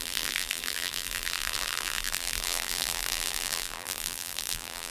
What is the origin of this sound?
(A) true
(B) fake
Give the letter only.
B